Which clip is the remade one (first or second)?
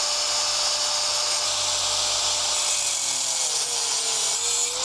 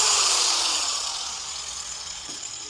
second